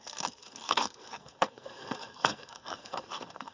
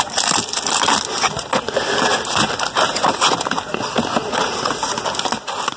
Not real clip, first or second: first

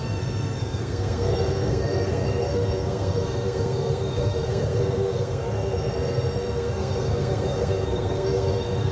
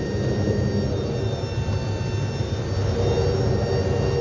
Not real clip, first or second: first